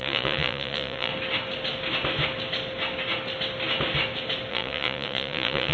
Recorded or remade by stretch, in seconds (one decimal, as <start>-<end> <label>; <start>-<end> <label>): 0.0-1.1 remade; 1.1-4.5 recorded; 4.5-5.7 remade